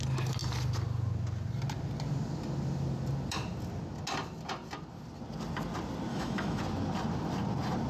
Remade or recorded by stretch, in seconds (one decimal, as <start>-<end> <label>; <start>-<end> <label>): 0.0-6.1 recorded; 6.1-6.6 remade; 6.6-7.9 recorded